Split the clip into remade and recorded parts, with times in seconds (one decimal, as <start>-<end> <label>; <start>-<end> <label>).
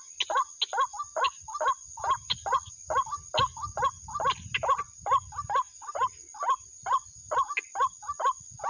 0.0-8.7 recorded